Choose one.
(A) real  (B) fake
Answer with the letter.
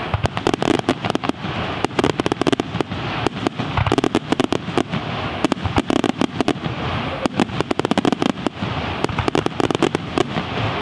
A